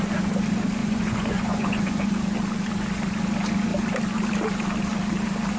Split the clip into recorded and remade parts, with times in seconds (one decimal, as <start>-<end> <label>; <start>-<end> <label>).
0.0-0.8 recorded; 0.8-2.1 remade; 2.1-5.6 recorded